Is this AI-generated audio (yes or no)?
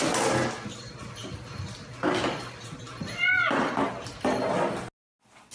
no